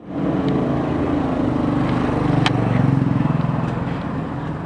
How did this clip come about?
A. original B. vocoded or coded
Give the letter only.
A